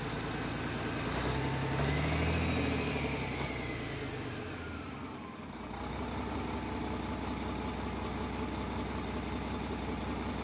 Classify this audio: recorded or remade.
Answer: recorded